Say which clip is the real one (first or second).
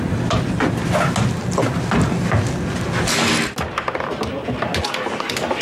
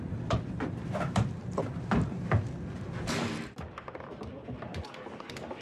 first